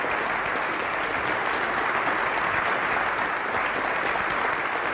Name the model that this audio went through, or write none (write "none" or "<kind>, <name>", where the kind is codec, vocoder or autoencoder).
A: none